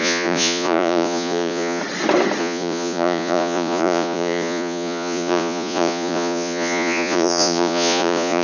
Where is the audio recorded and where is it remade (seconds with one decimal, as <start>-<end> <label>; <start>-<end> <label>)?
0.0-1.8 remade; 1.8-2.4 recorded; 2.4-8.4 remade